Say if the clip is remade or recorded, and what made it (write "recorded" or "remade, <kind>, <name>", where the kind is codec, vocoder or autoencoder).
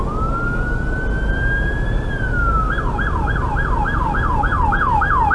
recorded